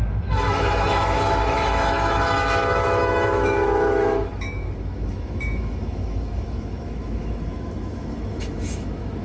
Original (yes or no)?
no